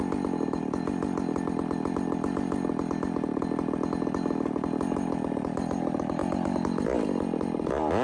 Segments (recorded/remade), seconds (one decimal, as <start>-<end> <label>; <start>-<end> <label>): 0.0-8.0 recorded